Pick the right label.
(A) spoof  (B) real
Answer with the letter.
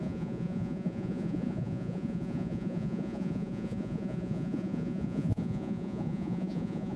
A